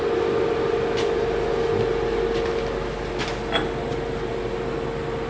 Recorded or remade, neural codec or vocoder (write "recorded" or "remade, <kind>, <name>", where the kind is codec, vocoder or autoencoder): recorded